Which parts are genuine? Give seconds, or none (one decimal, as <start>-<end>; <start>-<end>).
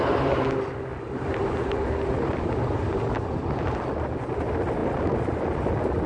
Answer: 0.0-6.1